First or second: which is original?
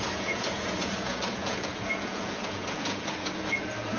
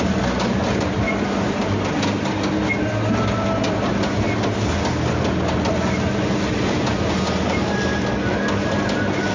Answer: second